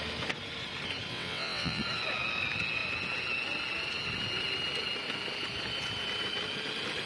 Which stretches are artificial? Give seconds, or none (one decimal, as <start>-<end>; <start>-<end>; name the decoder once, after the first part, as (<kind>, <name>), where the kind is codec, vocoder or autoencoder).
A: 1.1-1.8 (vocoder, WaveNeXt)